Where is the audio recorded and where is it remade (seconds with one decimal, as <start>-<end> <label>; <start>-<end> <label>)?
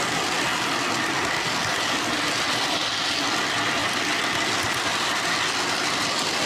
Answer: 0.0-6.5 recorded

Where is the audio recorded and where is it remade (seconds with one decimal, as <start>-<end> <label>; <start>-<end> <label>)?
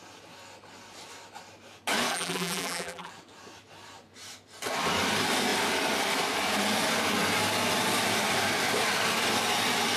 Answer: 0.0-2.1 recorded; 2.1-3.1 remade; 3.1-10.0 recorded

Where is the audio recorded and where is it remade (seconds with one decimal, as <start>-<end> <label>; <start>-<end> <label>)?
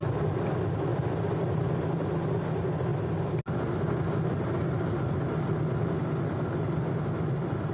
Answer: 0.0-7.7 recorded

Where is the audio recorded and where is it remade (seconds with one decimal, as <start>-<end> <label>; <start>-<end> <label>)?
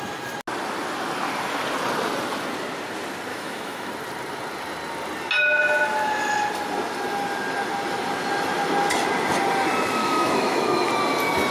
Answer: 0.0-3.3 recorded; 3.3-3.9 remade; 3.9-10.0 recorded; 10.0-10.9 remade; 10.9-11.5 recorded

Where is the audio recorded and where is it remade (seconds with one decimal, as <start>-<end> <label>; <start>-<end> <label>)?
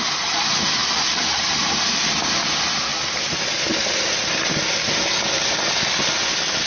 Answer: 0.0-0.8 recorded; 0.8-1.4 remade; 1.4-2.9 recorded; 2.9-3.6 remade; 3.6-6.7 recorded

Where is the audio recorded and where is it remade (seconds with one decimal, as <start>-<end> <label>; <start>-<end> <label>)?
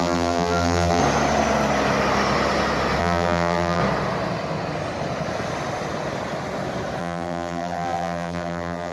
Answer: 0.0-1.0 remade; 1.0-3.0 recorded; 3.0-3.8 remade; 3.8-7.0 recorded; 7.0-8.9 remade